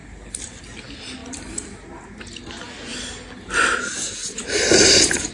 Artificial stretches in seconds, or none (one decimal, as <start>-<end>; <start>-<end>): 4.2-5.3